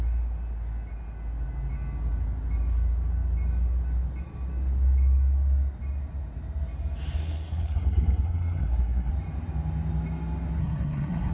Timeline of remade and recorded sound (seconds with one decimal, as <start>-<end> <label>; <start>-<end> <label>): 0.0-7.2 recorded; 7.2-9.1 remade; 9.1-10.6 recorded; 10.6-11.3 remade